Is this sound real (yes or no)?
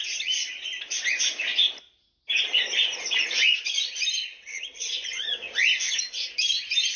yes